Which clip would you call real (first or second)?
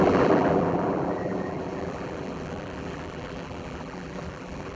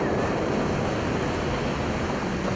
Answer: second